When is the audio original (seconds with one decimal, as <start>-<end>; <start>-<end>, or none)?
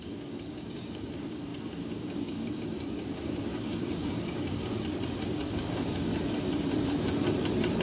4.7-5.5; 6.1-7.8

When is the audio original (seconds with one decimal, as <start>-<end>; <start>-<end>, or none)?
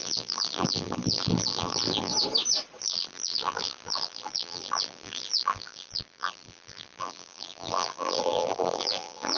2.1-2.8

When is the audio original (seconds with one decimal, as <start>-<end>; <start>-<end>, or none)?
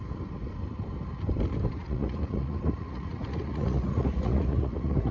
0.0-1.8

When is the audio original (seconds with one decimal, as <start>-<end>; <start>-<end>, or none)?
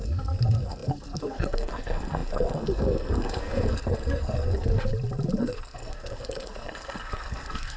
4.9-5.4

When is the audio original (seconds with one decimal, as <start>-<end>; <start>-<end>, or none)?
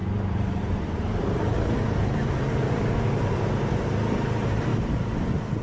4.7-5.6